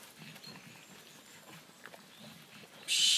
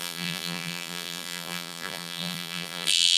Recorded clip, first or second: first